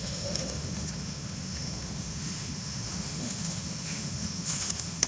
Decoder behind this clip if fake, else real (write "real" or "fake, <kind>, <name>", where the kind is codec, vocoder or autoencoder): fake, autoencoder, DAC-VAE